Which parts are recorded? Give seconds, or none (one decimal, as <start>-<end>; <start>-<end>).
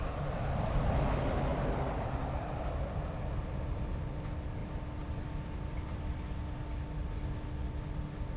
0.0-1.5; 2.6-4.6; 6.0-8.4